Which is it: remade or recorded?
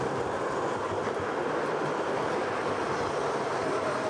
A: recorded